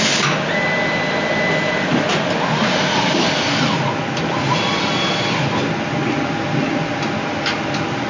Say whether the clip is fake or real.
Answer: real